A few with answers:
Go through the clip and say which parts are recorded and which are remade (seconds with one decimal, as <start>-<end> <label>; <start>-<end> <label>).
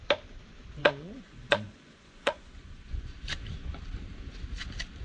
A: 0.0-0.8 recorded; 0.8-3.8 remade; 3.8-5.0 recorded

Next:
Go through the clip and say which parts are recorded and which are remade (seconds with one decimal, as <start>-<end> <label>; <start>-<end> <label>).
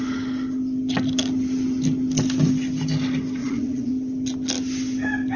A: 0.0-3.4 recorded; 3.4-3.9 remade; 3.9-5.4 recorded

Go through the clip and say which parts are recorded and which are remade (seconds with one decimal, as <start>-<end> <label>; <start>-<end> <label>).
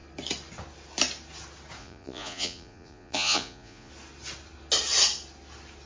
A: 0.0-1.8 recorded; 1.8-3.9 remade; 3.9-5.9 recorded